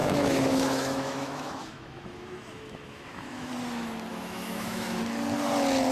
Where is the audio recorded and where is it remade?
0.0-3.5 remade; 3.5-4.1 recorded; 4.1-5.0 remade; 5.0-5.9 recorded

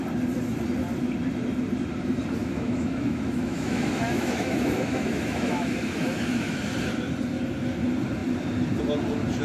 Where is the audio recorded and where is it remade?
0.0-2.4 recorded; 2.4-6.6 remade; 6.6-9.4 recorded

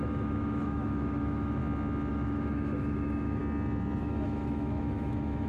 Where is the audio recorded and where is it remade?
0.0-1.6 remade; 1.6-2.1 recorded; 2.1-3.4 remade; 3.4-4.0 recorded; 4.0-5.5 remade

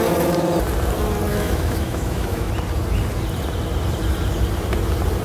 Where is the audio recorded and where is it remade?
0.0-1.3 recorded; 1.3-2.5 remade; 2.5-5.2 recorded

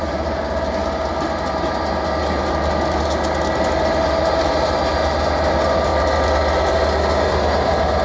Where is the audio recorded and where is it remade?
0.0-8.0 recorded

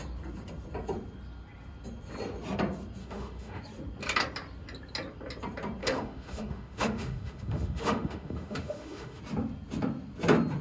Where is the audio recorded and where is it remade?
0.0-3.0 recorded; 3.0-3.6 remade; 3.6-5.8 recorded; 5.8-9.2 remade; 9.2-10.6 recorded